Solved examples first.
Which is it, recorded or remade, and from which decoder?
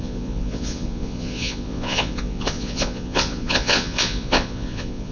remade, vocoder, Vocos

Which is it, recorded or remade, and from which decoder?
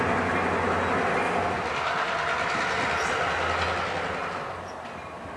recorded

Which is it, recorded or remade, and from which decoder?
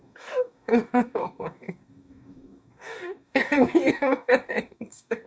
remade, codec, DAC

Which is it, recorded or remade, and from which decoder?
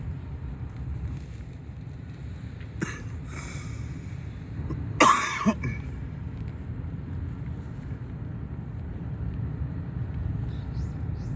recorded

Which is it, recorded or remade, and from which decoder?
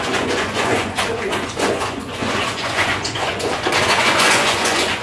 remade, vocoder, Vocos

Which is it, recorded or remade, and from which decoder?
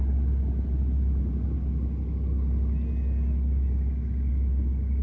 recorded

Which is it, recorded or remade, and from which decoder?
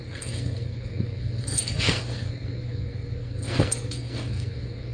remade, codec, SNAC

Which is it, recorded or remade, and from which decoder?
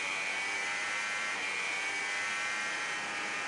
remade, vocoder, BigVGAN v2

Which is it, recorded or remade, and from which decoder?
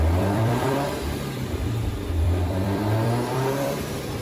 remade, vocoder, BigVGAN v2